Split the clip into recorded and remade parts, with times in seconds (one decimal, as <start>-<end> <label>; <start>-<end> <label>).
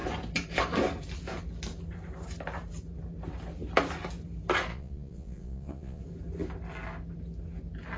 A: 0.0-4.7 recorded; 4.7-6.0 remade; 6.0-8.0 recorded